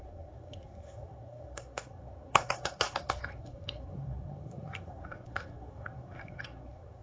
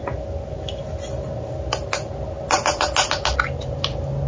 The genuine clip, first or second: second